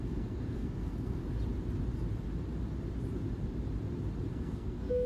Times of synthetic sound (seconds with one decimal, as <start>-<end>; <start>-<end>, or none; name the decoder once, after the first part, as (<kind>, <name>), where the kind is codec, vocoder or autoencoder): 0.0-1.2 (codec, SNAC); 4.3-5.1